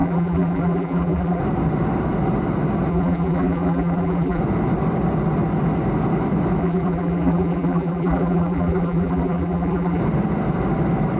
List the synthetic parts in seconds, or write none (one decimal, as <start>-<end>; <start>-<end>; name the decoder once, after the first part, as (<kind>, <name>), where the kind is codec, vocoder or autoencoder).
0.0-1.4 (vocoder, BigVGAN v2); 2.9-4.4; 6.6-10.0